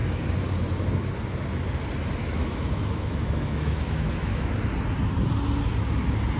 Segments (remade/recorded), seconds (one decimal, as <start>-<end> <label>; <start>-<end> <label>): 0.0-2.2 recorded; 2.2-4.5 remade; 4.5-6.4 recorded